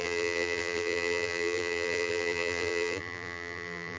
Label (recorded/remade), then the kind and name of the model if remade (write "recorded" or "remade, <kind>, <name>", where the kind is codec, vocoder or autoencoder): remade, vocoder, BigVGAN v2